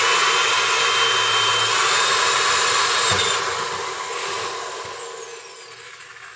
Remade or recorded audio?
recorded